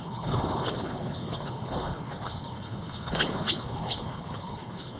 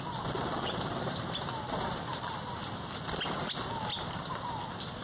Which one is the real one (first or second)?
second